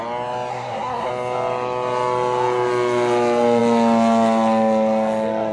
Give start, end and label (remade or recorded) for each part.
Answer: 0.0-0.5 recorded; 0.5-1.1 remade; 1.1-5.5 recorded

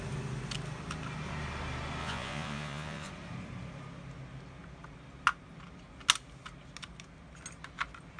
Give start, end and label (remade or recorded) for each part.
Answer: 0.0-2.0 recorded; 2.0-3.1 remade; 3.1-8.2 recorded

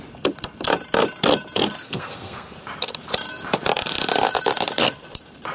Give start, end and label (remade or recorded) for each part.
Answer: 0.0-1.8 recorded; 1.8-2.6 remade; 2.6-5.5 recorded

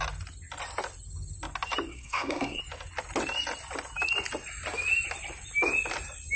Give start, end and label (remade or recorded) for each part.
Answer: 0.0-1.9 recorded; 1.9-2.6 remade; 2.6-6.4 recorded